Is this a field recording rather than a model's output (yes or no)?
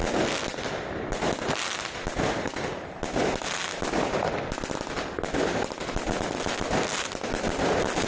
yes